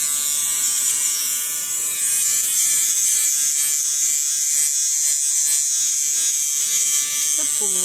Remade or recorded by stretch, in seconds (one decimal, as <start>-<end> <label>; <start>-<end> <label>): 0.0-0.4 recorded; 0.4-3.3 remade; 3.3-7.8 recorded